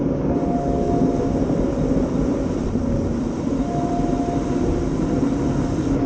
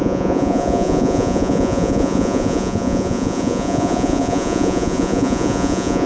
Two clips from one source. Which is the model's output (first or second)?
second